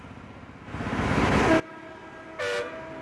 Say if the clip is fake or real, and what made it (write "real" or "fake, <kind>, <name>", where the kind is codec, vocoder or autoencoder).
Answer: real